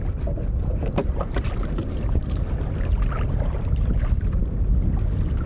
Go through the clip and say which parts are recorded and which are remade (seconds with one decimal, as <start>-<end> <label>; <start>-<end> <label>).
0.0-5.5 recorded